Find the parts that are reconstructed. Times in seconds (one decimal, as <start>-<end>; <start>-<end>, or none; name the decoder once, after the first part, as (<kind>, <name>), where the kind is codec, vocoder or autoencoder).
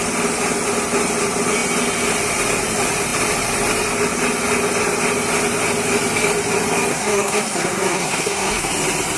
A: 6.9-8.7 (codec, SNAC)